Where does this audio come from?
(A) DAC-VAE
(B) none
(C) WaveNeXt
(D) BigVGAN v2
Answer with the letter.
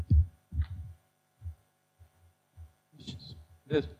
D